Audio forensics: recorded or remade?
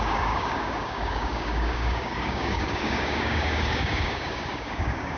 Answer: remade